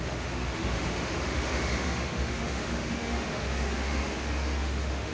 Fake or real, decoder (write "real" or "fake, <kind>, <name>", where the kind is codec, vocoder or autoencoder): fake, autoencoder, DAC-VAE